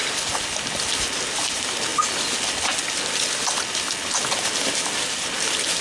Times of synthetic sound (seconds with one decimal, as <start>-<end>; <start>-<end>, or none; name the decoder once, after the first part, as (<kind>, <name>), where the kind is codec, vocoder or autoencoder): none